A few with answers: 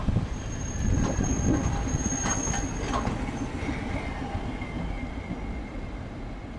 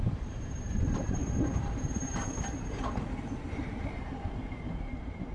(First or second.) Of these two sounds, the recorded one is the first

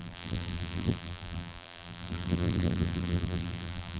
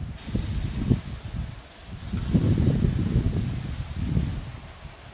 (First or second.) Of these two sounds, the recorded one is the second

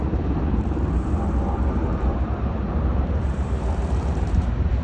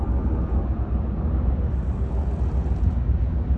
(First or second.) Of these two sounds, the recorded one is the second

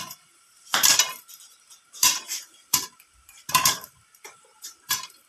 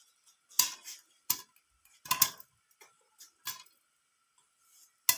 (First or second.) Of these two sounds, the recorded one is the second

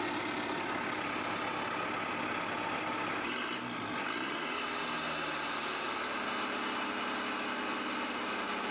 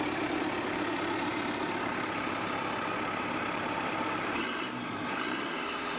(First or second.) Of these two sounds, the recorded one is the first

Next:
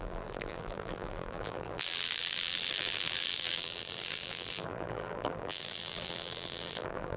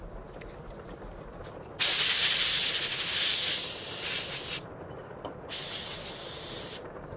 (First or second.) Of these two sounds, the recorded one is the second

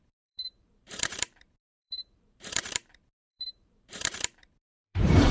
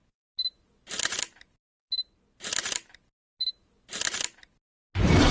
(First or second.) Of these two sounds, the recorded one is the second